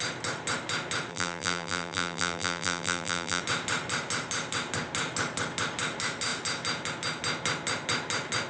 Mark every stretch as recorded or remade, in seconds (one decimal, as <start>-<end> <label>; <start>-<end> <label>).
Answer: 0.0-1.1 recorded; 1.1-3.4 remade; 3.4-8.5 recorded